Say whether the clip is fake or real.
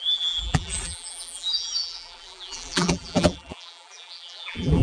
fake